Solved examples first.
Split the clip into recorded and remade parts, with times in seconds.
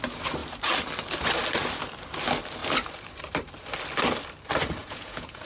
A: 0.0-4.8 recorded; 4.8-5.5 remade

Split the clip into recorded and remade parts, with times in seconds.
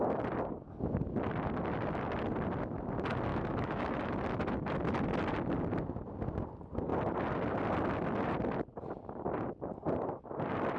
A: 0.0-3.3 recorded; 3.3-4.1 remade; 4.1-10.8 recorded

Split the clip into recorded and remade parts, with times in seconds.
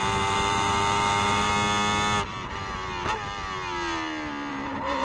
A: 0.0-1.5 remade; 1.5-4.5 recorded; 4.5-5.0 remade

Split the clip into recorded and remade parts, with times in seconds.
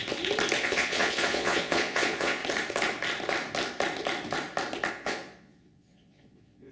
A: 0.0-0.6 recorded; 0.6-2.4 remade; 2.4-4.9 recorded; 4.9-6.7 remade